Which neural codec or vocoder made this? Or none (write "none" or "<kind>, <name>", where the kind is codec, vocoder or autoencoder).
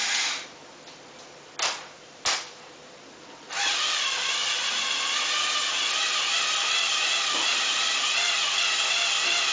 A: none